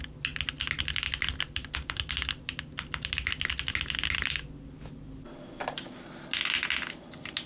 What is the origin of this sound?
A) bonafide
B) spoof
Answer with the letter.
A